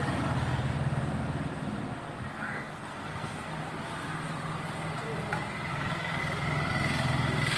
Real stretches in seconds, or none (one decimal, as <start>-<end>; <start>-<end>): 0.0-2.3; 3.5-5.7; 6.2-7.6